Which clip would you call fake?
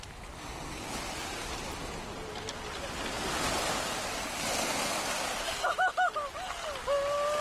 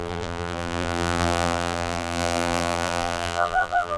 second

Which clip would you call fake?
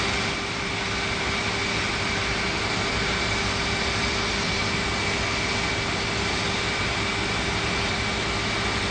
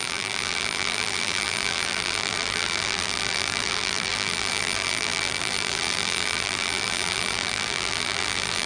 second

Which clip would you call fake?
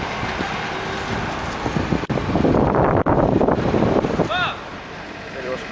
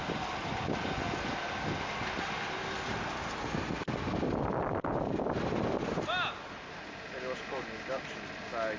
first